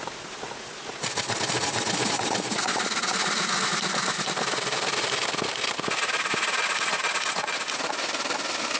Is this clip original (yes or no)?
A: yes